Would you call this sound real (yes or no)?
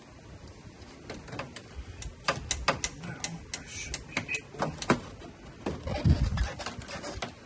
yes